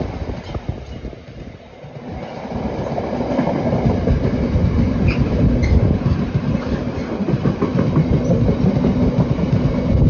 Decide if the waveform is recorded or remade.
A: recorded